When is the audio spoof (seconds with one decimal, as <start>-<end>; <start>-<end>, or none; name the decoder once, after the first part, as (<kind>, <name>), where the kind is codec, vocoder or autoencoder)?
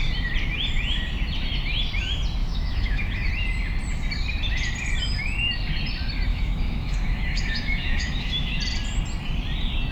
2.4-3.3 (autoencoder, DAC-VAE); 6.3-8.6